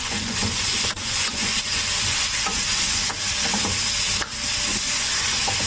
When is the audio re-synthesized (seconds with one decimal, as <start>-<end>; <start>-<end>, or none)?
0.0-3.1; 4.7-5.7